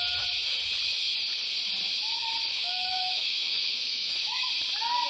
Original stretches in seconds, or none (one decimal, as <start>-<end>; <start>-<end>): 0.0-2.5; 4.5-5.1